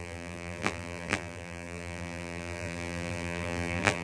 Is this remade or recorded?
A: remade